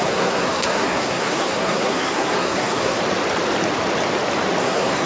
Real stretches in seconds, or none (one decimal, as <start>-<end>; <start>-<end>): 3.0-4.6